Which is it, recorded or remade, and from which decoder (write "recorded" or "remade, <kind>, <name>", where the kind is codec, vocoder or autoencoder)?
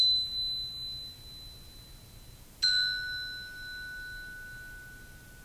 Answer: recorded